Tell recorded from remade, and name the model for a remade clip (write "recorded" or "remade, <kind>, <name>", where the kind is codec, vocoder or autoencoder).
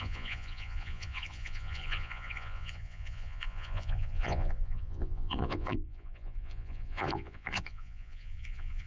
remade, vocoder, Vocos